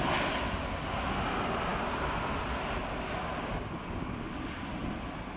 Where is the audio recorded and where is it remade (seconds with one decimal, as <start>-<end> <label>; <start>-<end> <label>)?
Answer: 0.0-5.4 recorded